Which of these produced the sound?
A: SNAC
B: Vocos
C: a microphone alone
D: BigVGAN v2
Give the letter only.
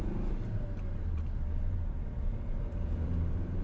D